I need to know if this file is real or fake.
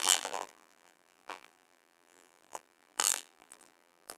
fake